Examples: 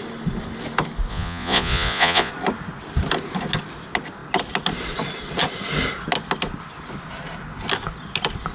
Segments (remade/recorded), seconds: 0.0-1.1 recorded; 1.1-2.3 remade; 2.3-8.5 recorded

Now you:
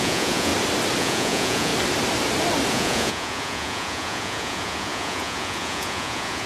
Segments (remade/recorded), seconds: 0.0-0.5 remade; 0.5-1.0 recorded; 1.0-1.7 remade; 1.7-2.7 recorded; 2.7-6.5 remade

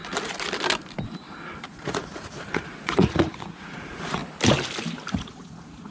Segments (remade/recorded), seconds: 0.0-1.7 recorded; 1.7-4.2 remade; 4.2-5.1 recorded; 5.1-5.9 remade

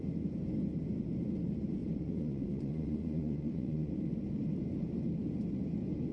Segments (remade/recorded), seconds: 0.0-1.8 recorded; 1.8-3.9 remade; 3.9-6.1 recorded